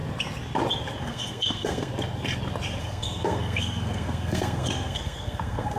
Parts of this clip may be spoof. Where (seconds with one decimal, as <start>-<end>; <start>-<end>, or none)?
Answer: 1.0-1.9; 2.8-5.8